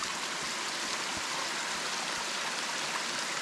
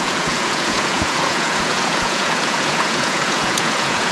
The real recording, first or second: first